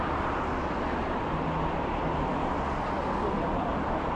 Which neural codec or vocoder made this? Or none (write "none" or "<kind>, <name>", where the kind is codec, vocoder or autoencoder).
none